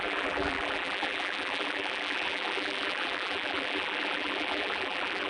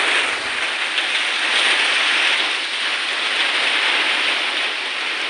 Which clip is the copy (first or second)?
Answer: first